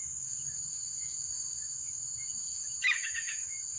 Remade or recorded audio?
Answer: remade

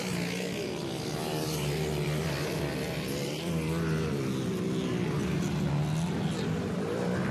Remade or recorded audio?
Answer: recorded